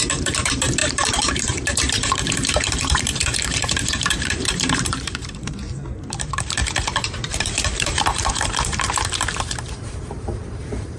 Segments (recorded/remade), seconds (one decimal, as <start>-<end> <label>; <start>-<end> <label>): 0.0-11.0 remade